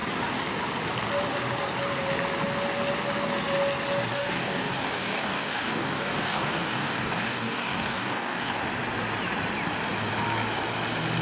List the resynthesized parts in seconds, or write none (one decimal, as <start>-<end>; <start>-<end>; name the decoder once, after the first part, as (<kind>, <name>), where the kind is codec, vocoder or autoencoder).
4.1-8.6 (codec, DAC)